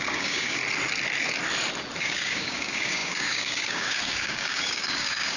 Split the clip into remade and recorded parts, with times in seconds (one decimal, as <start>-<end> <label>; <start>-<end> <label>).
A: 0.0-0.6 remade; 0.6-2.0 recorded; 2.0-5.4 remade